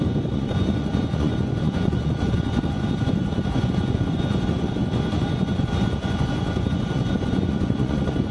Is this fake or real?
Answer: fake